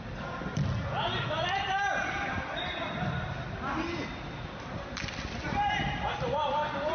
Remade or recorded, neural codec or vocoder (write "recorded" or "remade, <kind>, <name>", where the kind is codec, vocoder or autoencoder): recorded